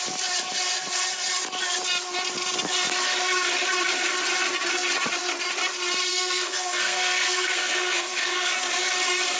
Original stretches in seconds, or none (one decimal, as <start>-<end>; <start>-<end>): 0.0-6.1; 8.5-9.4

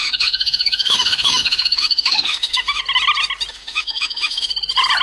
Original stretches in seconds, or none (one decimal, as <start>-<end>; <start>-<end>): 2.8-3.5; 4.5-5.0